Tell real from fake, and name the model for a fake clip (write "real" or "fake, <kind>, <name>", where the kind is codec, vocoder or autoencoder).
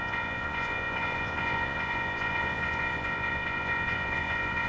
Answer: fake, vocoder, Vocos